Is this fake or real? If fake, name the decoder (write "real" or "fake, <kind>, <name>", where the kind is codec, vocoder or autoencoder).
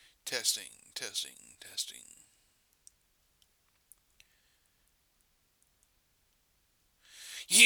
real